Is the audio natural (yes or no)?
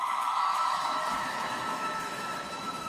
no